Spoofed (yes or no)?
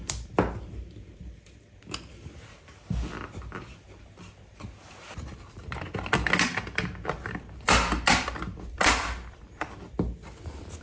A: no